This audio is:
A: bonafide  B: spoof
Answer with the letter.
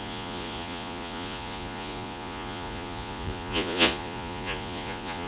B